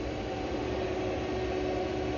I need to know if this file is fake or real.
real